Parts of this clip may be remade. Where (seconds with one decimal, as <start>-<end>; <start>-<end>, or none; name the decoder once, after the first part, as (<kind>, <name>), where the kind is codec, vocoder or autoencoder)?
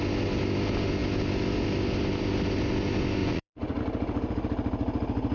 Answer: 3.2-3.8 (vocoder, Vocos)